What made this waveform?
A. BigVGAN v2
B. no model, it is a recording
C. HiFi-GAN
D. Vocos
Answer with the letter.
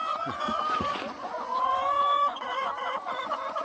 D